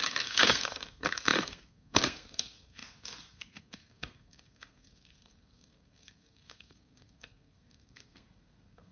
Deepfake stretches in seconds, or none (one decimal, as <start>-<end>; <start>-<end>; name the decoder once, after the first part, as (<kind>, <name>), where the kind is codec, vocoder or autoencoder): 0.0-8.9 (codec, SNAC)

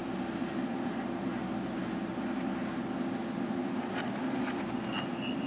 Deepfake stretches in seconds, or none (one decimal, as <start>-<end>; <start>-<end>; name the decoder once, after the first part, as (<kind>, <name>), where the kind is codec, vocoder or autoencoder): none

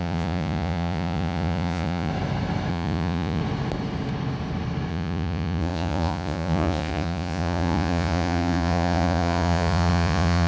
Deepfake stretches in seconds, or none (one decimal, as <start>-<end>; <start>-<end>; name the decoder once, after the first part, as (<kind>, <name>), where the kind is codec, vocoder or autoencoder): 0.0-2.1 (vocoder, Vocos); 2.7-3.4; 4.9-10.5

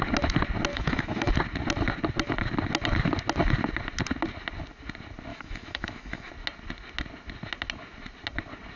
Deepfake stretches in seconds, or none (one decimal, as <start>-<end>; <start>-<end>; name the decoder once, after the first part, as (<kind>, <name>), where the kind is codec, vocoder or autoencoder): 0.7-1.3 (autoencoder, DAC-VAE); 5.3-6.3